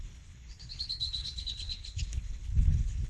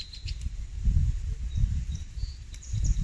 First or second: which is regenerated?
first